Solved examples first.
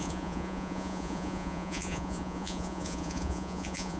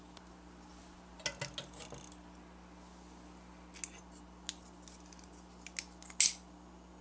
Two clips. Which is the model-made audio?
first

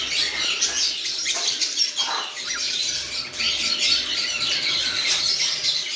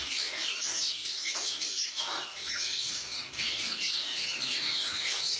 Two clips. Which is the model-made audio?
second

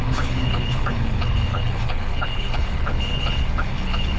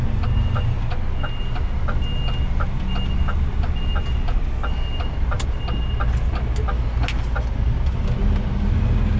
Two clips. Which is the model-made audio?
first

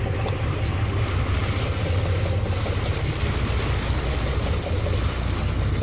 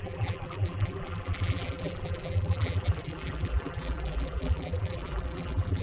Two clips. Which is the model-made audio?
second